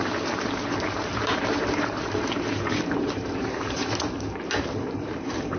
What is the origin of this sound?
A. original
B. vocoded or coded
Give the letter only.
B